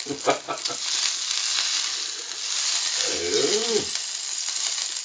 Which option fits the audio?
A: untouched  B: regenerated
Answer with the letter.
A